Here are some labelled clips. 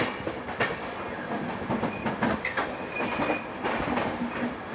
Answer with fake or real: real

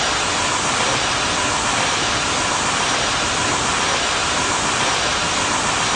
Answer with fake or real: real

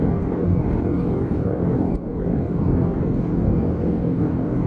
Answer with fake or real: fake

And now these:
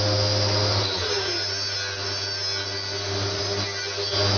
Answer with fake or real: real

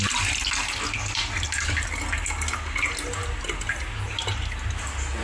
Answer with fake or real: real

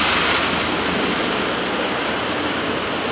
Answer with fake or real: real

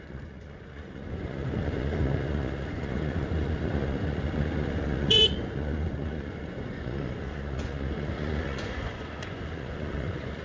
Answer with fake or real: fake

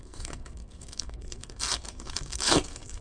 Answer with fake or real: fake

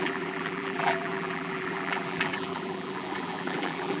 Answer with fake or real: fake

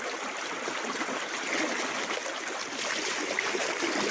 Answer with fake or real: real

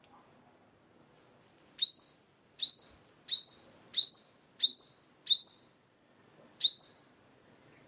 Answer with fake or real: fake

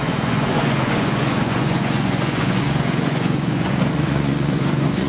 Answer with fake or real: fake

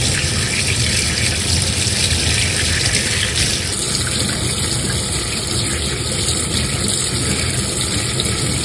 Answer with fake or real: real